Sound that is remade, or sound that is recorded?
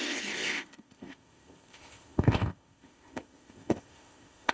remade